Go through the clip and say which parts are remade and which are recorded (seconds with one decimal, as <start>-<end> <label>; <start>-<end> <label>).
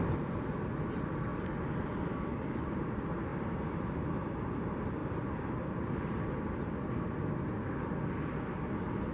0.0-3.3 recorded; 3.3-4.0 remade; 4.0-5.0 recorded; 5.0-6.0 remade; 6.0-9.1 recorded